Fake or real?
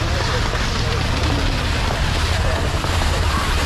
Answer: real